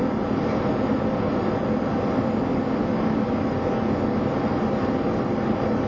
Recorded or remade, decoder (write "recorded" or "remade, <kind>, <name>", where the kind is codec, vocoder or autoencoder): recorded